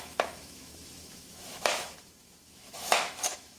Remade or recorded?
remade